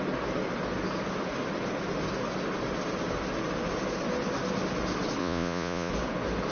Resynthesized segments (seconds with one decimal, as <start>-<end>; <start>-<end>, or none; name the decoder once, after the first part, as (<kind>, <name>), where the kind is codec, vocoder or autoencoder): 5.2-5.9 (vocoder, Vocos)